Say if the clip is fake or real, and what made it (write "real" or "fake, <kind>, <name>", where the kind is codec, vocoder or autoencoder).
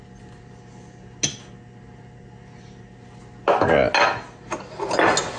real